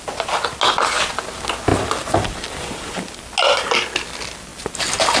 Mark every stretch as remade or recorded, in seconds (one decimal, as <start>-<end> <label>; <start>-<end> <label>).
0.0-1.7 recorded; 1.7-3.2 remade; 3.2-4.5 recorded; 4.5-5.2 remade